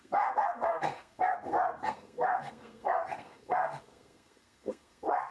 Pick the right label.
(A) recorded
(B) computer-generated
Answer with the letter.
B